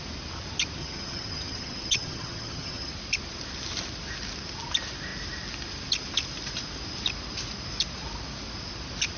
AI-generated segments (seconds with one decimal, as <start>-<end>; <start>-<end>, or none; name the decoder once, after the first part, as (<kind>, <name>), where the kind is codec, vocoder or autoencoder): 0.8-2.9 (vocoder, HiFi-GAN)